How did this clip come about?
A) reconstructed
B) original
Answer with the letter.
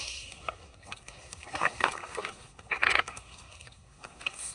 A